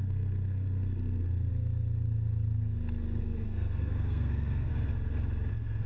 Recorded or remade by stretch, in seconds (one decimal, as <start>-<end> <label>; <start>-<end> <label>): 0.0-1.5 remade; 1.5-3.2 recorded; 3.2-4.7 remade; 4.7-5.5 recorded; 5.5-5.9 remade